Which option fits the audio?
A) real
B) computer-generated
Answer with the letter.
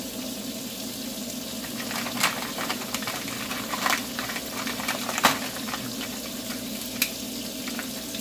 A